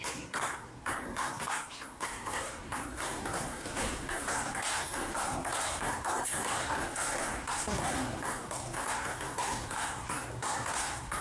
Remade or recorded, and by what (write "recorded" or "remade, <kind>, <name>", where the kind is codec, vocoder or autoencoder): remade, codec, SNAC